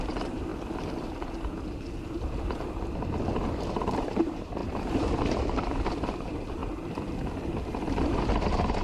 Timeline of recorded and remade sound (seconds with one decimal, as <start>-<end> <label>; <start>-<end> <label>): 0.0-0.5 remade; 0.5-3.7 recorded; 3.7-6.6 remade; 6.6-8.0 recorded; 8.0-8.8 remade